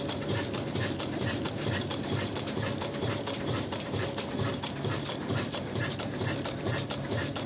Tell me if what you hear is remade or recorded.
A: remade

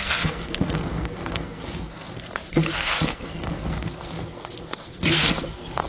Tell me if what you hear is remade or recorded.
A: remade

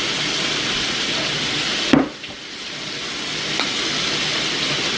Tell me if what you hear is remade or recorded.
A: recorded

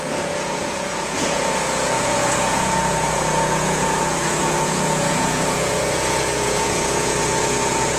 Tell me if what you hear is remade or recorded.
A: remade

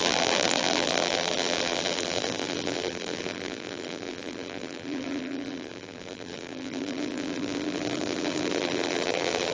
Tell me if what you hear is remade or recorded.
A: remade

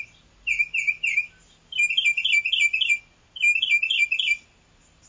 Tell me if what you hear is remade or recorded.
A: recorded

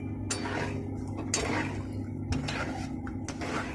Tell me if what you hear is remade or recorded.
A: recorded